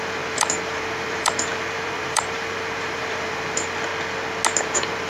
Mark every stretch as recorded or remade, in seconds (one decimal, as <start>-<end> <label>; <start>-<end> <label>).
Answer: 0.0-3.9 remade; 3.9-4.6 recorded; 4.6-5.1 remade